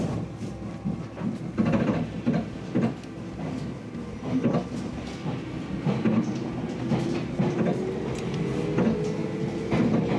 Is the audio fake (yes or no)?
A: no